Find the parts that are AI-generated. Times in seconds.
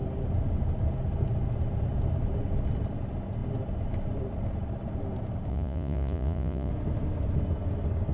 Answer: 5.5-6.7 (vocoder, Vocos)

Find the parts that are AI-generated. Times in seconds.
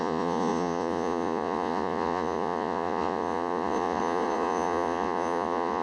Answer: 0.0-5.8 (vocoder, Vocos)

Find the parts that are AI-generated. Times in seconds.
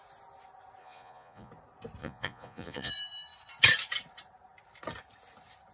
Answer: 0.8-1.5 (vocoder, Vocos); 2.0-2.9